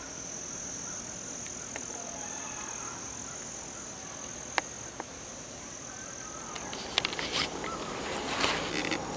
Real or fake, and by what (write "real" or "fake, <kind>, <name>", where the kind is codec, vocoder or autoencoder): real